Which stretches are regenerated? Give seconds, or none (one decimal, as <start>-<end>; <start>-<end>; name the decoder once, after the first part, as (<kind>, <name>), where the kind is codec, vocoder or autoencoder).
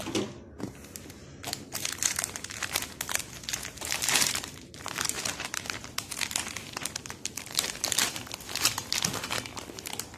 1.2-3.0 (vocoder, BigVGAN v2); 3.5-6.3; 7.0-8.3